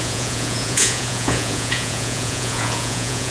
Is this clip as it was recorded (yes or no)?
no